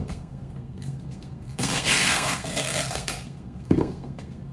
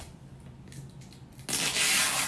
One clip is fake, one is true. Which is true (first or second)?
second